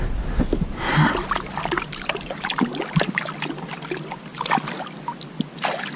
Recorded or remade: recorded